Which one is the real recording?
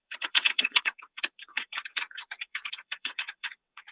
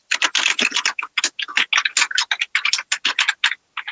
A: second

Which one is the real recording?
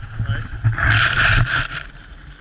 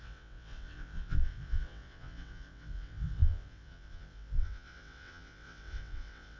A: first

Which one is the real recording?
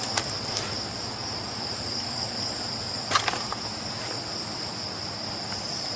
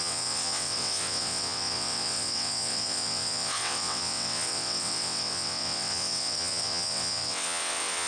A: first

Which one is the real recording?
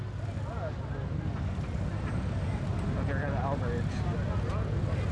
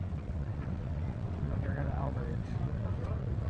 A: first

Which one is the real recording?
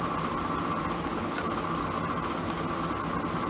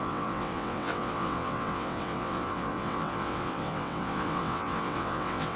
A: first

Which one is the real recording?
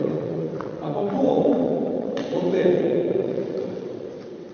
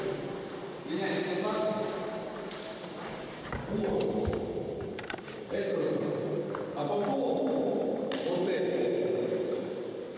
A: second